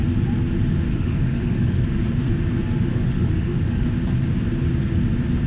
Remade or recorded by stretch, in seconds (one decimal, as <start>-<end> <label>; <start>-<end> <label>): 0.0-0.9 recorded; 0.9-1.8 remade; 1.8-2.9 recorded; 2.9-3.9 remade; 3.9-5.5 recorded